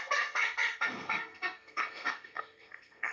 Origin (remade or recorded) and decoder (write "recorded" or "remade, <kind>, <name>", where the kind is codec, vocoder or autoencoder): remade, codec, SNAC